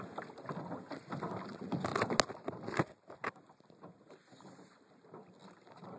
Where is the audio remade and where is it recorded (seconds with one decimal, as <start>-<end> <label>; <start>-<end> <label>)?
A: 0.0-6.0 recorded